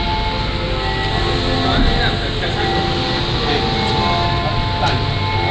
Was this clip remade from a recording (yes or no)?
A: no